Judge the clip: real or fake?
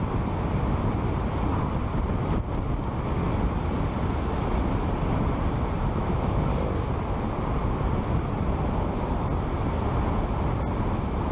real